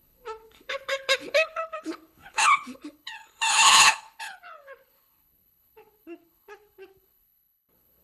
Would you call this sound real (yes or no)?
no